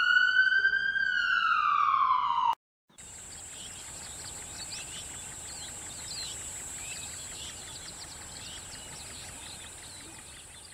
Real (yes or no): yes